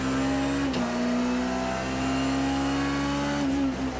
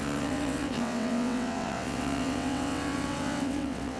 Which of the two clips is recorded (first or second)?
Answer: first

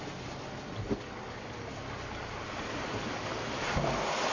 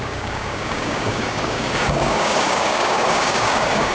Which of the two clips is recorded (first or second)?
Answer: first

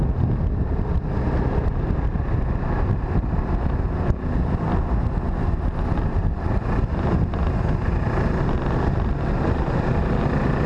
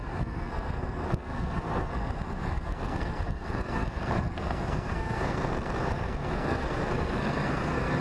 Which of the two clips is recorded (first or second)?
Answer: first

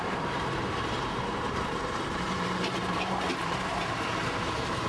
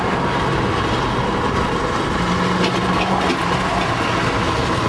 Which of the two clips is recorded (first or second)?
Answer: second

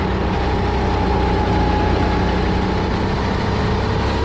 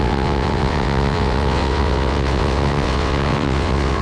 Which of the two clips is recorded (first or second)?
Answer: first